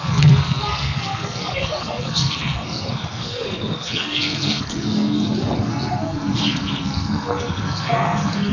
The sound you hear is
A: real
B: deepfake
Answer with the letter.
B